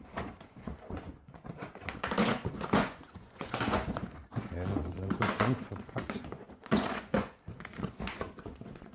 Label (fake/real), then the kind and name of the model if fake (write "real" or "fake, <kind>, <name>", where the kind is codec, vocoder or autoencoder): fake, vocoder, Vocos